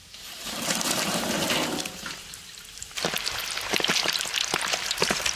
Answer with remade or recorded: remade